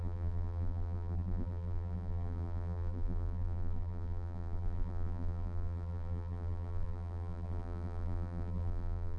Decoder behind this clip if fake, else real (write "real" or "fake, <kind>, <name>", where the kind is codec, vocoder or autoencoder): fake, vocoder, BigVGAN v2